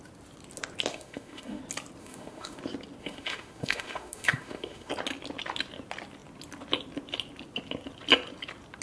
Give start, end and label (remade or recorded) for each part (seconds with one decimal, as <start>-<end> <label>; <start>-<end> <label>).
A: 0.0-0.9 recorded; 0.9-1.6 remade; 1.6-2.0 recorded; 2.0-2.6 remade; 2.6-3.0 recorded; 3.0-4.9 remade; 4.9-8.8 recorded